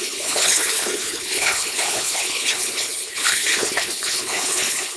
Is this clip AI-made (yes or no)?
yes